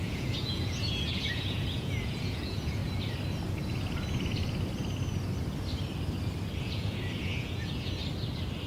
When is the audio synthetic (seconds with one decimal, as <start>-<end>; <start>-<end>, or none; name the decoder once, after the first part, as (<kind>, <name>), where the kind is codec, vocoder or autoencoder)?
0.0-2.8 (vocoder, Vocos); 6.6-8.0